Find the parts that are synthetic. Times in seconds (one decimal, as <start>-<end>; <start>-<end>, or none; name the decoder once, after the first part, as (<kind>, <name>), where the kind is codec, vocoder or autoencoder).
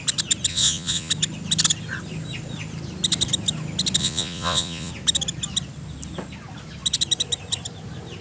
0.5-1.1 (vocoder, Vocos); 4.0-4.9